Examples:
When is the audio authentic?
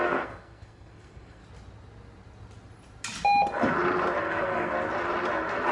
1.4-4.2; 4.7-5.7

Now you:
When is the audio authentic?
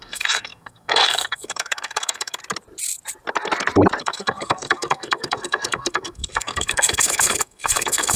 2.4-4.0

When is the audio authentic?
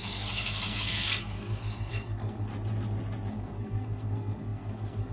2.5-3.3